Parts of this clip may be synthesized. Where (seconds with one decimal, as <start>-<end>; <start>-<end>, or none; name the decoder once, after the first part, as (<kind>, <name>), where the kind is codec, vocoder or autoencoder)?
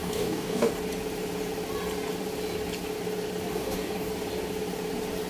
0.0-0.7 (codec, DAC); 3.5-4.1